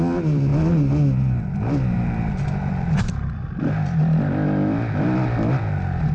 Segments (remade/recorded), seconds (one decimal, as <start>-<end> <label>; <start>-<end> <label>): 0.0-6.1 recorded